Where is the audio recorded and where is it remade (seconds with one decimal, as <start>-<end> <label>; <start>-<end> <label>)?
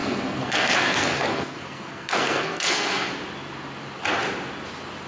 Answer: 0.0-3.1 remade; 3.1-5.1 recorded